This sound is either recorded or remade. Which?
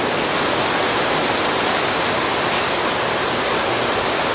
recorded